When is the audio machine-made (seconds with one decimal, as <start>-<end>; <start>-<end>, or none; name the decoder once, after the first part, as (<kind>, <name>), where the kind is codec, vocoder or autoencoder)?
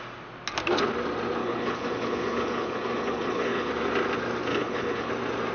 1.4-3.7 (codec, HILCodec); 4.5-5.1